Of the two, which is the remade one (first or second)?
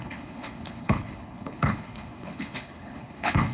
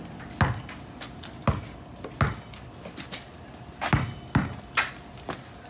first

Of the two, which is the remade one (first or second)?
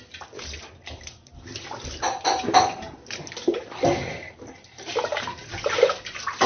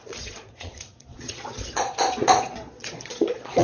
second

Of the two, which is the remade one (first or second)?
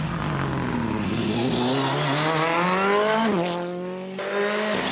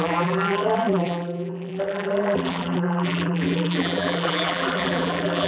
second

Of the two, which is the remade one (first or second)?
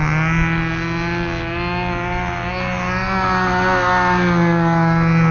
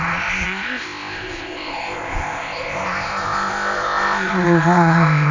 second